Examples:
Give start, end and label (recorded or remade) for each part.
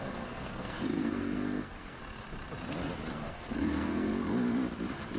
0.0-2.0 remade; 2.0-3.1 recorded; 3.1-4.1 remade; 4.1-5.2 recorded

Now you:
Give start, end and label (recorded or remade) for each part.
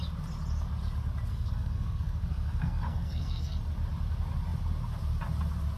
0.0-1.3 recorded; 1.3-3.6 remade; 3.6-5.8 recorded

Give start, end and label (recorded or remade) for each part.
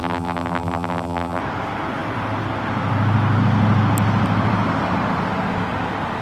0.0-1.4 remade; 1.4-6.2 recorded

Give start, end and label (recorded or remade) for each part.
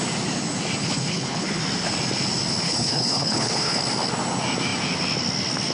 0.0-0.8 recorded; 0.8-1.6 remade; 1.6-2.6 recorded; 2.6-3.8 remade; 3.8-5.7 recorded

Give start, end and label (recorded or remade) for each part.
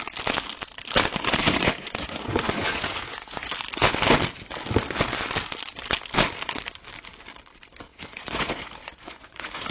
0.0-1.4 recorded; 1.4-3.5 remade; 3.5-7.9 recorded; 7.9-9.7 remade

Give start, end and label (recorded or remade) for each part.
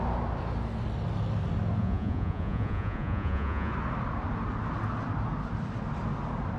0.0-1.8 recorded; 1.8-3.7 remade; 3.7-6.6 recorded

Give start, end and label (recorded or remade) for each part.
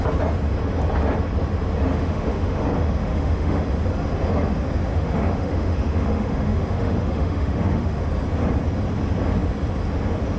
0.0-1.9 recorded; 1.9-2.6 remade; 2.6-3.0 recorded; 3.0-3.6 remade; 3.6-4.9 recorded; 4.9-8.1 remade; 8.1-10.4 recorded